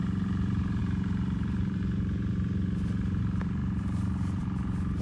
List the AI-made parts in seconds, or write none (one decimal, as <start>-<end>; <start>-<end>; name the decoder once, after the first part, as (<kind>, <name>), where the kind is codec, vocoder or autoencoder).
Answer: 0.0-5.0 (vocoder, BigVGAN v2)